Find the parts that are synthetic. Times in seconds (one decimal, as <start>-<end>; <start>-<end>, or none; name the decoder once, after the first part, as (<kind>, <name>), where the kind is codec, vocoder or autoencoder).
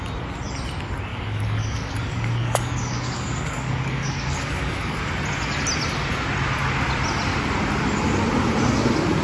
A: 1.1-5.1 (codec, DAC)